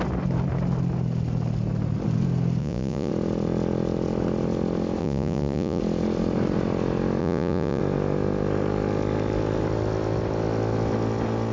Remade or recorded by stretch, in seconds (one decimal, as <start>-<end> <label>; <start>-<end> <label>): 0.0-2.6 recorded; 2.6-3.1 remade; 3.1-5.0 recorded; 5.0-5.8 remade; 5.8-7.2 recorded; 7.2-7.8 remade; 7.8-11.5 recorded

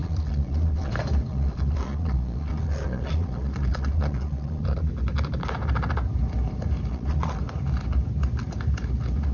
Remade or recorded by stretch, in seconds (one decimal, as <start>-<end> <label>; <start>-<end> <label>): 0.0-0.9 remade; 0.9-1.3 recorded; 1.3-4.9 remade; 4.9-6.9 recorded; 6.9-7.4 remade; 7.4-9.3 recorded